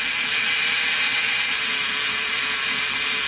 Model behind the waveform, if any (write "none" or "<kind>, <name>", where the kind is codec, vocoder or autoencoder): none